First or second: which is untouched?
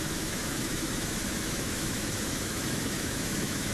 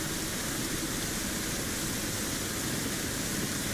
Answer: second